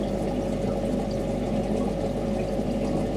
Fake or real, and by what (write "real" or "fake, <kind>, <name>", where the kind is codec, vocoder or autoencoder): real